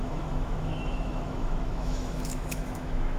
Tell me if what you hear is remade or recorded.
remade